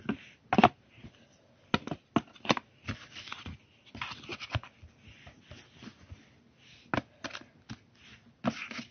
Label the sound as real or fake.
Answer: real